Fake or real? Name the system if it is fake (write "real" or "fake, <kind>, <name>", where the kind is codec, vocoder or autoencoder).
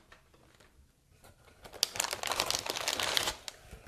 real